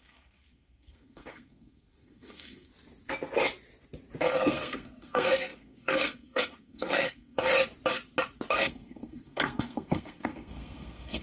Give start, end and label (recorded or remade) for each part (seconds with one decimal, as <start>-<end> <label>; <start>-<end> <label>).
0.0-2.7 remade; 2.7-4.5 recorded; 4.5-7.5 remade; 7.5-8.5 recorded; 8.5-11.2 remade